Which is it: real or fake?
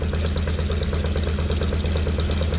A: real